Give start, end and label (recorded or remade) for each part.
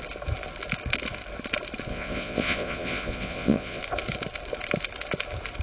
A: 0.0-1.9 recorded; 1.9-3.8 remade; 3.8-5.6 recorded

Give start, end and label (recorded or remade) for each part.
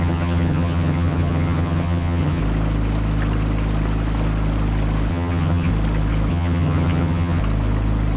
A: 0.0-2.4 remade; 2.4-5.1 recorded; 5.1-5.7 remade; 5.7-6.3 recorded; 6.3-7.4 remade; 7.4-8.2 recorded